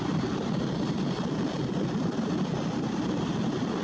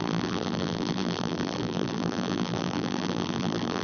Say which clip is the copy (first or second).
second